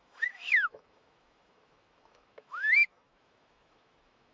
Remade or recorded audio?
remade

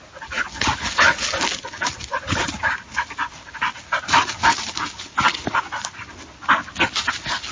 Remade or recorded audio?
recorded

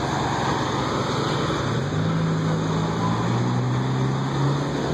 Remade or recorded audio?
recorded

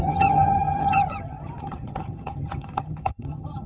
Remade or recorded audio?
remade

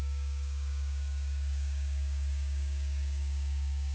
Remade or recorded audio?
remade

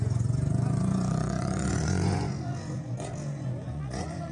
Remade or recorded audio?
remade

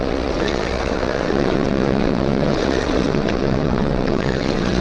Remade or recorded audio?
remade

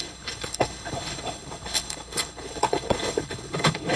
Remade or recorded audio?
remade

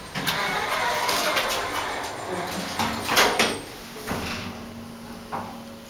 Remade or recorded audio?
recorded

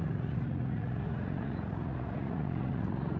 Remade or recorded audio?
remade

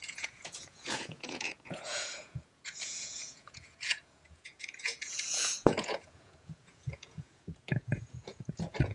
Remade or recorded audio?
remade